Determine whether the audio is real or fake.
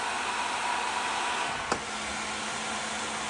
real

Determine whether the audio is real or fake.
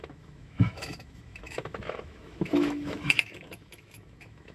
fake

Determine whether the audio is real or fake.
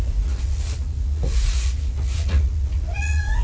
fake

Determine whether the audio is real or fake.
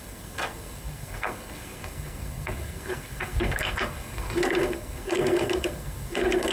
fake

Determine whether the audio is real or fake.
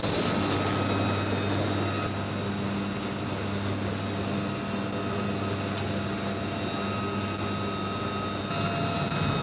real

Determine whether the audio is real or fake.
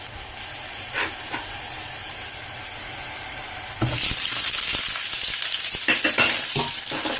real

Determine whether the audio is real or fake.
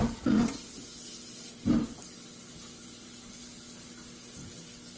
real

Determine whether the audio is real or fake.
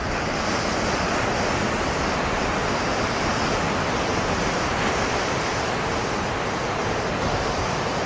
real